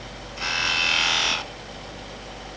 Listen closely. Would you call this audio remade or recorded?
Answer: recorded